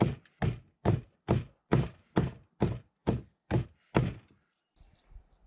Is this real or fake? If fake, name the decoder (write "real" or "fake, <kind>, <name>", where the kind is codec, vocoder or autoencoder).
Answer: real